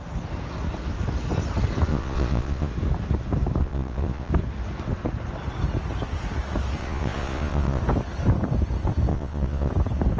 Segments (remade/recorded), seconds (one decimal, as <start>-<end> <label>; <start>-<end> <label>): 0.0-1.9 recorded; 1.9-2.7 remade; 2.7-3.6 recorded; 3.6-4.3 remade; 4.3-6.8 recorded; 6.8-7.8 remade; 7.8-9.1 recorded; 9.1-9.7 remade; 9.7-10.2 recorded